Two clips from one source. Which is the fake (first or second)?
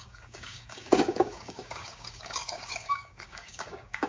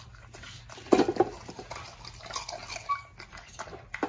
first